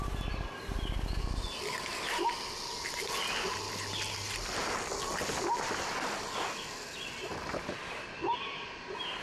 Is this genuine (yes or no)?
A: yes